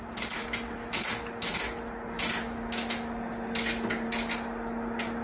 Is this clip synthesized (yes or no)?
no